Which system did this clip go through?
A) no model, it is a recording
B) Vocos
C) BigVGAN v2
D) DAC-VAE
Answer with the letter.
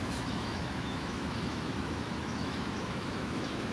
D